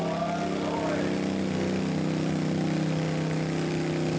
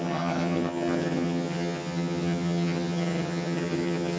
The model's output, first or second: second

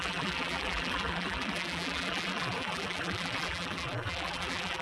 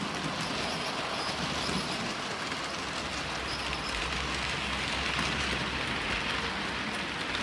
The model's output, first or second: first